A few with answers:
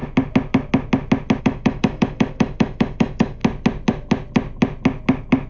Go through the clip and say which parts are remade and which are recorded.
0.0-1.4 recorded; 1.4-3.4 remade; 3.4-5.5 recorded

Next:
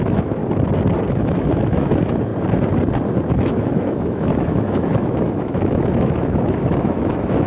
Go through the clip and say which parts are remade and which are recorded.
0.0-0.4 remade; 0.4-1.1 recorded; 1.1-2.3 remade; 2.3-3.3 recorded; 3.3-7.5 remade

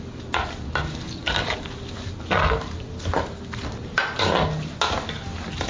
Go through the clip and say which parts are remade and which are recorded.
0.0-5.7 recorded

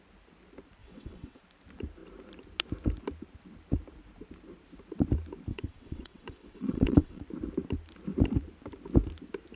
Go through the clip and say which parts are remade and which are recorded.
0.0-0.8 recorded; 0.8-1.4 remade; 1.4-5.5 recorded; 5.5-7.2 remade; 7.2-9.6 recorded

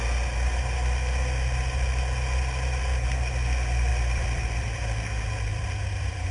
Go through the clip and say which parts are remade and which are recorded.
0.0-3.9 recorded; 3.9-4.8 remade; 4.8-5.5 recorded; 5.5-6.3 remade

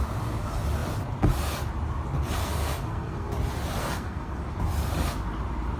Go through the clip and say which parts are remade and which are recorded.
0.0-2.4 recorded; 2.4-3.3 remade; 3.3-3.8 recorded; 3.8-4.4 remade; 4.4-5.8 recorded